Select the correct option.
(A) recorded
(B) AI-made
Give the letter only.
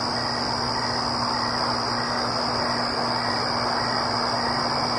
A